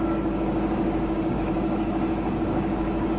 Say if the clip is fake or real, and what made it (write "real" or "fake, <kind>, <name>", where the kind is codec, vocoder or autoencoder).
fake, codec, DAC